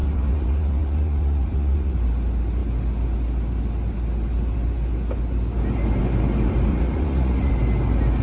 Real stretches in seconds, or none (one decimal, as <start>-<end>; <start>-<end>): 2.0-6.7; 7.5-8.2